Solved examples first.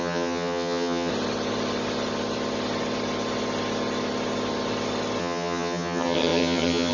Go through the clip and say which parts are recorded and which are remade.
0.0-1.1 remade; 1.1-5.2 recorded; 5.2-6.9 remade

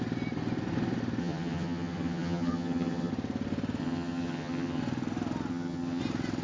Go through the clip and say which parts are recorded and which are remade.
0.0-1.2 recorded; 1.2-3.1 remade; 3.1-3.8 recorded; 3.8-4.8 remade; 4.8-5.5 recorded; 5.5-6.0 remade; 6.0-6.4 recorded

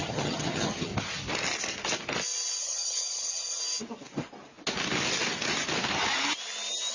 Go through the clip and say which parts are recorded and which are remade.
0.0-0.9 remade; 0.9-2.6 recorded; 2.6-3.6 remade; 3.6-6.9 recorded

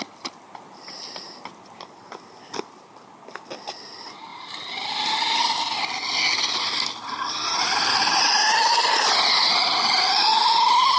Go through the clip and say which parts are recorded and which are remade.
0.0-11.0 recorded

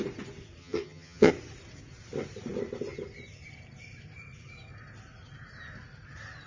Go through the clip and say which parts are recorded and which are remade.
0.0-0.6 recorded; 0.6-1.3 remade; 1.3-6.5 recorded

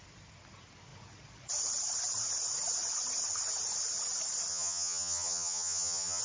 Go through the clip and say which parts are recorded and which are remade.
0.0-4.5 recorded; 4.5-6.2 remade

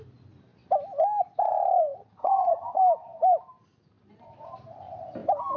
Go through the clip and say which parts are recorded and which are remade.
0.0-2.2 recorded; 2.2-2.8 remade; 2.8-5.6 recorded

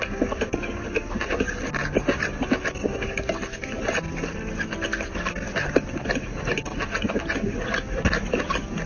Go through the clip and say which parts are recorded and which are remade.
0.0-8.9 recorded